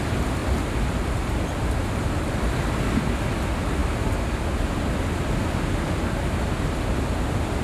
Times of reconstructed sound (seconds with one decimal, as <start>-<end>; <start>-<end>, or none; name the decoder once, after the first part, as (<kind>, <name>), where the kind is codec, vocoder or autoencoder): none